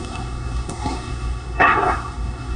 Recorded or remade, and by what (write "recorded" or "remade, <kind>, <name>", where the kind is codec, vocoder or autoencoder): remade, codec, SNAC